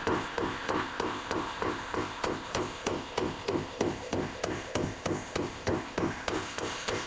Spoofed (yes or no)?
yes